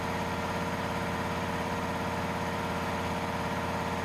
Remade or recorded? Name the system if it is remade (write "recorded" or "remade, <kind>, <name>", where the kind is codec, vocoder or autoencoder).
recorded